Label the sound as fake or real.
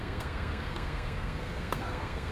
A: fake